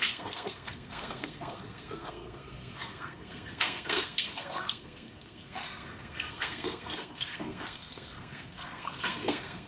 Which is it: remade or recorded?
remade